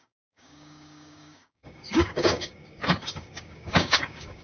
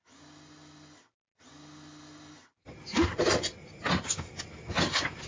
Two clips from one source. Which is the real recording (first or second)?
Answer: second